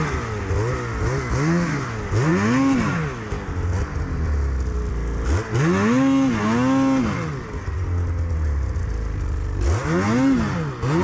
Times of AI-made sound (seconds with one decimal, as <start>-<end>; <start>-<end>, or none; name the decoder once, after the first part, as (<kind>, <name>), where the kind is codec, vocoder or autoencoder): none